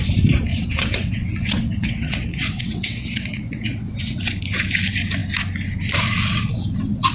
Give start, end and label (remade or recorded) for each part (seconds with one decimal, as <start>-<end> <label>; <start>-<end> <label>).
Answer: 0.0-0.5 recorded; 0.5-4.3 remade; 4.3-7.1 recorded